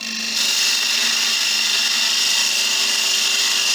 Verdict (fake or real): real